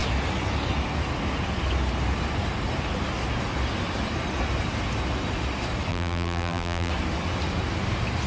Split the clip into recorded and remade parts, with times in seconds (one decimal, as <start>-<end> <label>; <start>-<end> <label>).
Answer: 0.0-5.9 recorded; 5.9-6.9 remade; 6.9-8.3 recorded